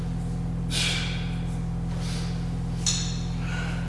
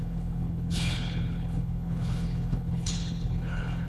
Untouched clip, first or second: first